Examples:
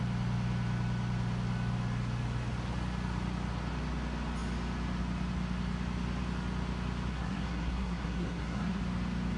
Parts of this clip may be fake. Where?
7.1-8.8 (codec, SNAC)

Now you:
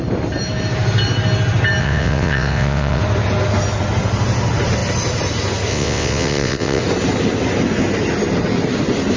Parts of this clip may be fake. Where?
1.8-3.0 (vocoder, WaveNeXt); 5.7-6.8

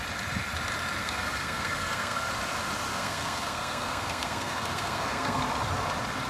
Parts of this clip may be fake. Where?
1.0-2.3 (codec, SNAC); 2.9-5.4

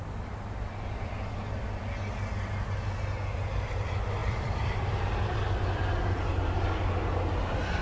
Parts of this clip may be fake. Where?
4.2-5.1 (vocoder, BigVGAN v2)

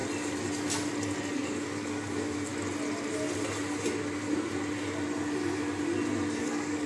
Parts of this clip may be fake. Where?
1.3-2.5 (codec, DAC); 6.4-6.9

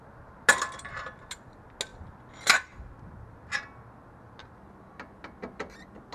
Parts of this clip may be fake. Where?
none